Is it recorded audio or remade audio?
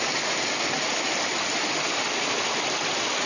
recorded